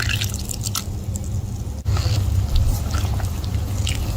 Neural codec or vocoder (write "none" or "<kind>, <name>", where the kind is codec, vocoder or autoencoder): none